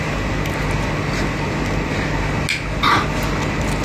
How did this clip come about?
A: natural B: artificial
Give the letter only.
A